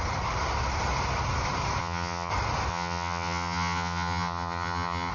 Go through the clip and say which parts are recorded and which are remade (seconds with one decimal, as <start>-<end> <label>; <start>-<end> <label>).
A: 0.0-1.8 recorded; 1.8-2.3 remade; 2.3-2.7 recorded; 2.7-5.1 remade